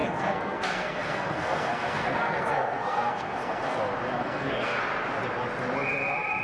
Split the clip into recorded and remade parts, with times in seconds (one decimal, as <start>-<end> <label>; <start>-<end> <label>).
0.0-3.8 remade; 3.8-4.2 recorded; 4.2-4.8 remade; 4.8-6.4 recorded